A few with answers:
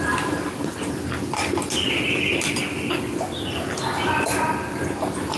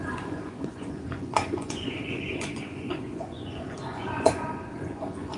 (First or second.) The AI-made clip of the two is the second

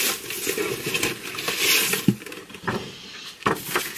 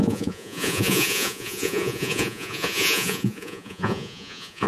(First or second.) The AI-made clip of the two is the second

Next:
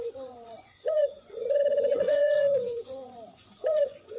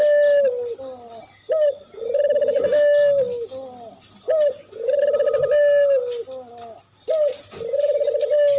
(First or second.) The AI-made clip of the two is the first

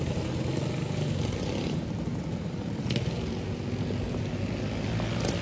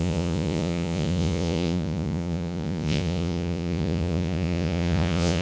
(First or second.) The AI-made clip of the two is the second